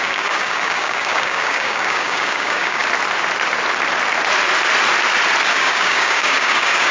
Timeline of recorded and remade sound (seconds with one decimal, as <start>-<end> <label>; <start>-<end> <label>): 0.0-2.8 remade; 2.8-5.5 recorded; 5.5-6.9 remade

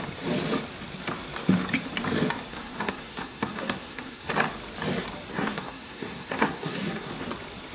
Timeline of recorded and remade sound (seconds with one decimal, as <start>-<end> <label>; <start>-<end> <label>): 0.0-2.5 recorded; 2.5-4.3 remade; 4.3-5.3 recorded; 5.3-7.1 remade; 7.1-7.7 recorded

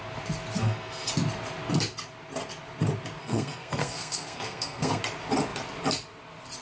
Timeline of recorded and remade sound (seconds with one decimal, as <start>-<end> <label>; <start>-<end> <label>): 0.0-0.6 recorded; 0.6-1.1 remade; 1.1-3.2 recorded; 3.2-5.0 remade; 5.0-6.6 recorded